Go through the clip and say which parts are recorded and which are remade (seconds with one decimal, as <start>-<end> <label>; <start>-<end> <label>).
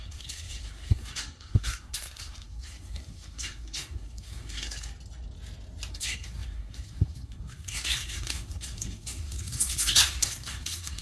0.0-4.9 remade; 4.9-5.9 recorded; 5.9-11.0 remade